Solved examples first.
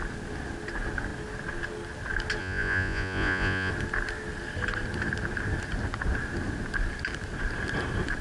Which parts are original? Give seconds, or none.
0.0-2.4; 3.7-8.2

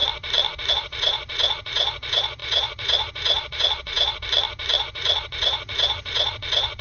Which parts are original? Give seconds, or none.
0.0-0.7; 4.2-4.8

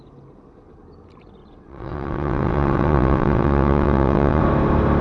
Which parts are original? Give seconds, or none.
0.0-1.4; 4.4-5.0

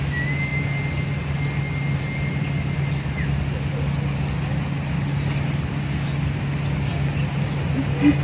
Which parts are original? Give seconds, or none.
0.0-8.2

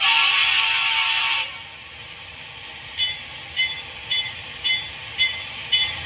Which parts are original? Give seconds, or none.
0.0-0.4; 1.5-6.1

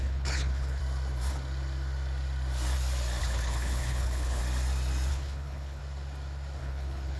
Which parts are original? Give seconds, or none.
0.8-3.2; 4.4-5.1; 5.8-6.6

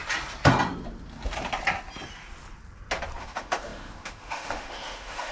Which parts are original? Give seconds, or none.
0.0-3.2

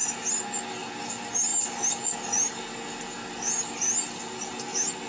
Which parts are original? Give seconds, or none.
0.0-5.1